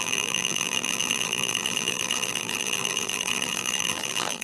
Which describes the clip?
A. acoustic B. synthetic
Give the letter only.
B